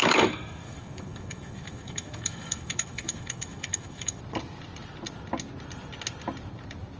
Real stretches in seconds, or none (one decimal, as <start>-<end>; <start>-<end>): 4.2-7.0